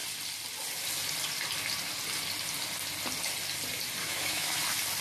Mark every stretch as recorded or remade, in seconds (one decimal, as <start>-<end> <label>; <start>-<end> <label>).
0.0-4.0 recorded; 4.0-4.6 remade; 4.6-5.0 recorded